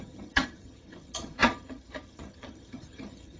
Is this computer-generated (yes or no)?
yes